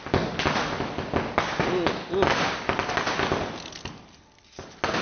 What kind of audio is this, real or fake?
real